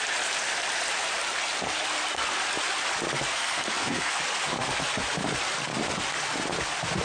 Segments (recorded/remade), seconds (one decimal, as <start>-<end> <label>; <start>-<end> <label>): 0.0-3.3 recorded; 3.3-4.2 remade; 4.2-7.0 recorded